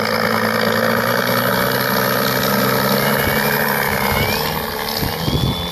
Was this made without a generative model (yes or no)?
yes